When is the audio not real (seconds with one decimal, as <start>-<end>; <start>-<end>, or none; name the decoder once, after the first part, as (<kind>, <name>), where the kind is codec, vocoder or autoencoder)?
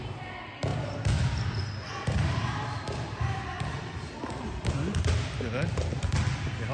none